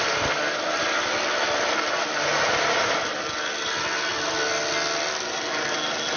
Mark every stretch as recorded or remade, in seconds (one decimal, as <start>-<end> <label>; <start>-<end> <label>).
0.0-6.2 recorded